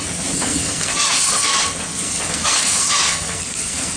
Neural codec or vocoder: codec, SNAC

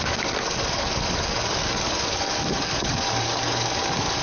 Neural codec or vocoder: codec, DAC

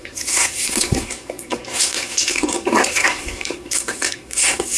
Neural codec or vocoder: codec, SNAC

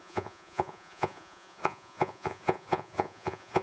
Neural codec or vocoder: vocoder, Vocos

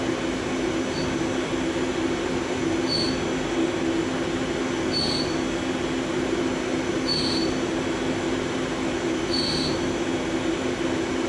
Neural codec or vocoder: none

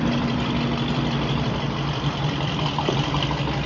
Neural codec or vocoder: vocoder, BigVGAN v2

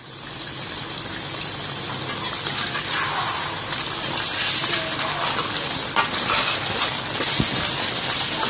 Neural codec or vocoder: none